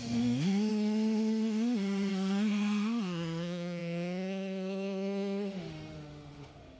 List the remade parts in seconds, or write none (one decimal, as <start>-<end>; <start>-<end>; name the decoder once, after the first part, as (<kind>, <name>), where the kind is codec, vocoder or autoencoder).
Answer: 0.0-6.8 (autoencoder, DAC-VAE)